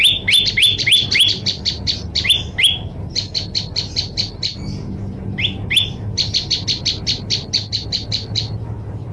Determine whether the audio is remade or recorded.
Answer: recorded